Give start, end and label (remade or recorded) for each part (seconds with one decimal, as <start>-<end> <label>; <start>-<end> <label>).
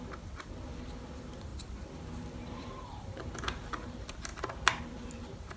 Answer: 0.0-4.3 remade; 4.3-4.8 recorded; 4.8-5.6 remade